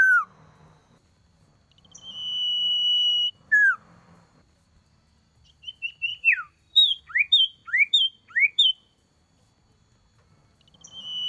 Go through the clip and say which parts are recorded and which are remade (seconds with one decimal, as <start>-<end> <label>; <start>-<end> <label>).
0.0-6.1 recorded; 6.1-7.0 remade; 7.0-11.3 recorded